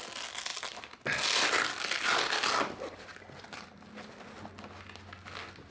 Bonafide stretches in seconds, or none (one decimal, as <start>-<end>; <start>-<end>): 0.0-5.7